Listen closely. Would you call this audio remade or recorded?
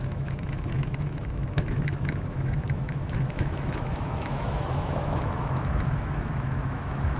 remade